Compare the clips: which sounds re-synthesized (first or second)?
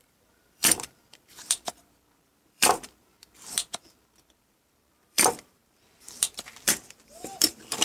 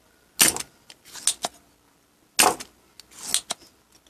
first